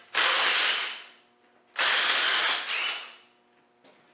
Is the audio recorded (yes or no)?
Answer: yes